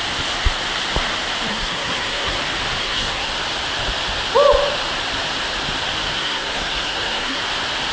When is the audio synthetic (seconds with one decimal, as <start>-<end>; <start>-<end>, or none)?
1.5-2.4; 2.8-3.3; 6.1-7.4